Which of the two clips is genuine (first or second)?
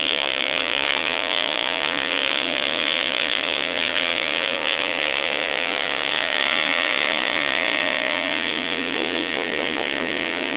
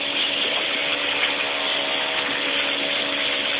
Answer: second